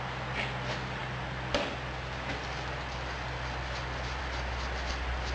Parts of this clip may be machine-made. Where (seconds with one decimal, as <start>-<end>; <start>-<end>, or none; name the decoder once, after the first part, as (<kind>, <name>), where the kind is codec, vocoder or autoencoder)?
none